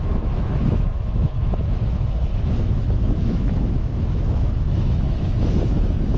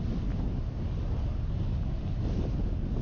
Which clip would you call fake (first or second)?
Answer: first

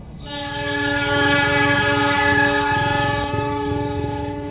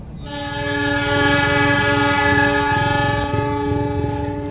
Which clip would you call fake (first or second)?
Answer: first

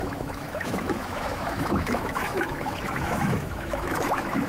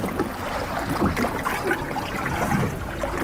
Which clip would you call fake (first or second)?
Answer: first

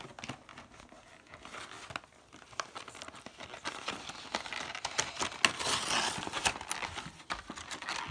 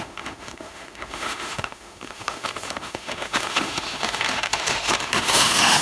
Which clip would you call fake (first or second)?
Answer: second